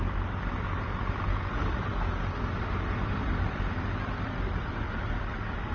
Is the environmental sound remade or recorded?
recorded